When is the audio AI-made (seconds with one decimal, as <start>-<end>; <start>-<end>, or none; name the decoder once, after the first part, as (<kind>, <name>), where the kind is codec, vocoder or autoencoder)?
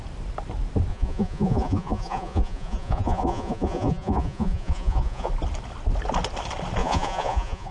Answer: 0.9-5.3 (vocoder, Vocos); 6.8-7.7